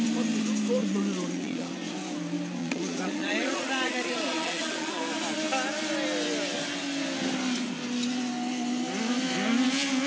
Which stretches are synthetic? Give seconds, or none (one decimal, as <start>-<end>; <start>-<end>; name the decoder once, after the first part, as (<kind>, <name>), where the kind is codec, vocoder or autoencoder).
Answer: 0.8-1.7 (vocoder, Vocos); 2.6-5.0